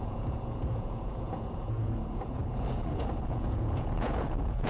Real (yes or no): no